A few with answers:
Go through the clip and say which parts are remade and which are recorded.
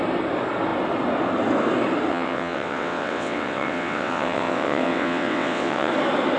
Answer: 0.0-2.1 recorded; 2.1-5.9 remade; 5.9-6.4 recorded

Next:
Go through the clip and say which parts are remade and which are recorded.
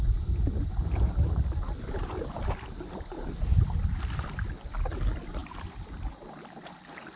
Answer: 0.0-7.2 recorded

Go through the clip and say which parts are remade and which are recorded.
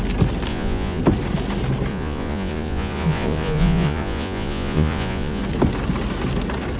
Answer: 0.0-0.5 recorded; 0.5-1.0 remade; 1.0-1.9 recorded; 1.9-5.4 remade; 5.4-6.8 recorded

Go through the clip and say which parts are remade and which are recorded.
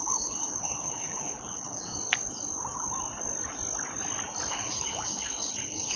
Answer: 0.0-1.9 remade; 1.9-4.5 recorded; 4.5-6.0 remade